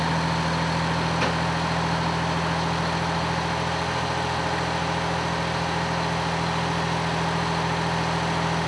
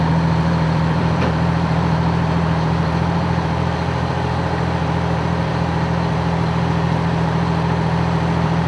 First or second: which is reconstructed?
second